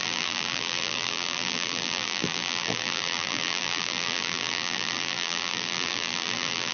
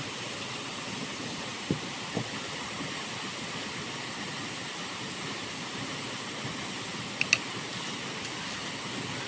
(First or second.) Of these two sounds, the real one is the second